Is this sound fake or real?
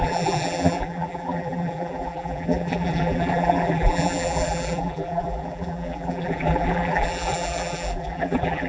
fake